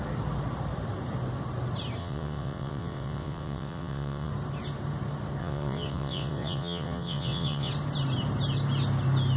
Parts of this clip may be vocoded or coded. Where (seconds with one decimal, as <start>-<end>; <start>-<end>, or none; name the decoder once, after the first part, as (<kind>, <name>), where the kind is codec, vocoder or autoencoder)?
2.0-4.3 (vocoder, WaveNeXt); 5.4-7.7